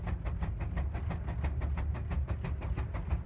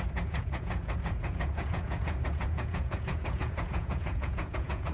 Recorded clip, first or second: first